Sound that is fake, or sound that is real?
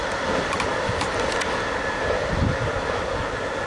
fake